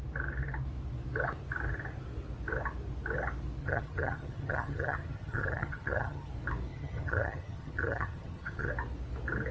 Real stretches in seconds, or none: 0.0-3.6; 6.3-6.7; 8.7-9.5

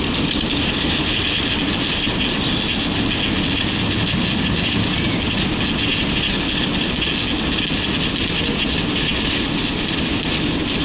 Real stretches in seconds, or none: 0.0-10.8